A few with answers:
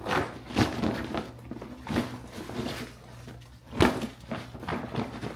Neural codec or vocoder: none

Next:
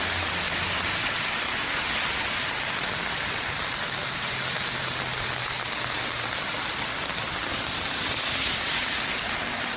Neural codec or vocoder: none